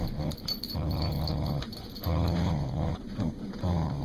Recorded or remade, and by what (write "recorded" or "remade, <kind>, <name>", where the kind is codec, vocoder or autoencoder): remade, vocoder, BigVGAN v2